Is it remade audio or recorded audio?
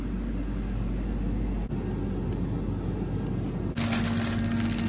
recorded